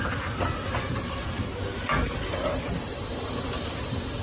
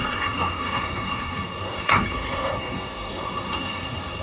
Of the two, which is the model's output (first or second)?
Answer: second